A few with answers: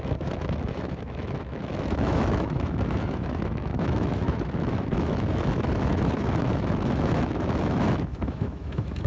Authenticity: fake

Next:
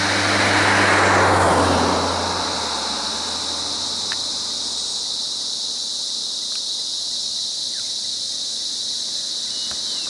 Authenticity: real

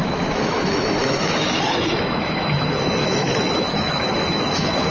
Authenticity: fake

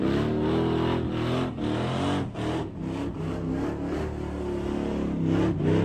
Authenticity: real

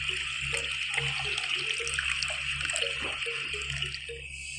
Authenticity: real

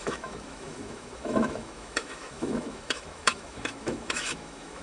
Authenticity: fake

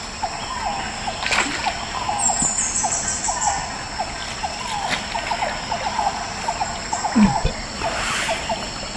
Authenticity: real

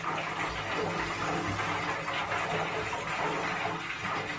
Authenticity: real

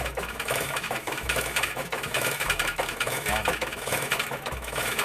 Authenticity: fake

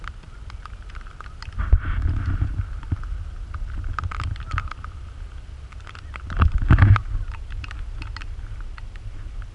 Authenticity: real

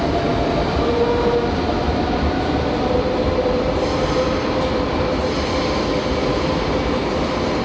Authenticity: real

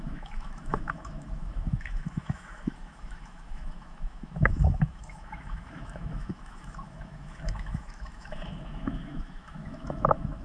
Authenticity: fake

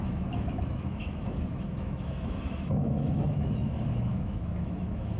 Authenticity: fake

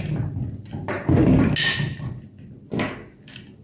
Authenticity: real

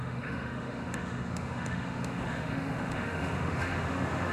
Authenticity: fake